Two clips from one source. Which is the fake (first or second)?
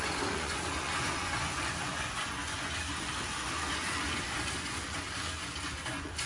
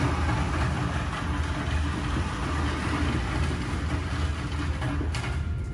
first